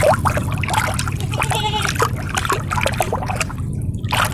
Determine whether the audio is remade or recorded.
recorded